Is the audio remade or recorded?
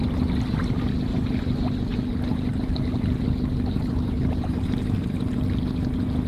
recorded